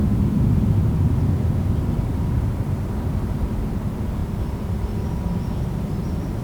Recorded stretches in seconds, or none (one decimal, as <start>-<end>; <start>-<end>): 0.0-4.2; 5.2-6.4